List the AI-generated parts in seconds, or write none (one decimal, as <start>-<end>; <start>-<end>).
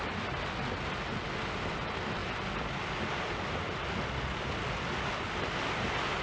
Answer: 2.2-6.2